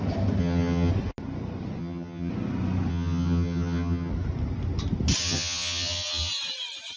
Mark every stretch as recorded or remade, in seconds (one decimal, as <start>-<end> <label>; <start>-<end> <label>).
0.0-0.4 recorded; 0.4-0.9 remade; 0.9-1.8 recorded; 1.8-2.3 remade; 2.3-2.9 recorded; 2.9-4.1 remade; 4.1-5.2 recorded; 5.2-6.3 remade; 6.3-7.0 recorded